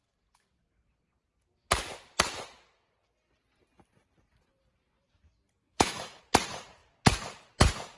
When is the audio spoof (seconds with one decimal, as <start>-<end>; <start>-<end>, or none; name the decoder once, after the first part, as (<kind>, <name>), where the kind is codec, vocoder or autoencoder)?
5.6-6.2 (autoencoder, DAC-VAE)